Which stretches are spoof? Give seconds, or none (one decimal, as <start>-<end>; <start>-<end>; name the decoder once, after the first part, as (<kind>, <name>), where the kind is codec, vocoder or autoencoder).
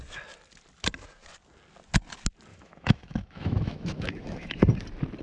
2.5-4.6 (autoencoder, DAC-VAE)